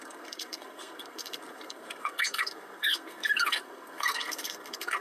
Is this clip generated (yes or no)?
yes